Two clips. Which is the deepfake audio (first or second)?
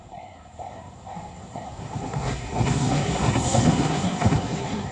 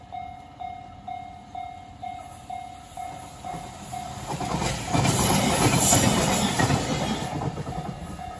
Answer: first